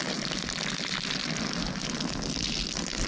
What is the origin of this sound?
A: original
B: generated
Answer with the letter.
A